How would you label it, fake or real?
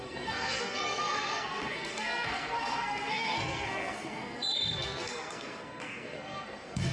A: fake